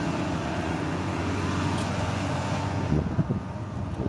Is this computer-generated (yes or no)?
yes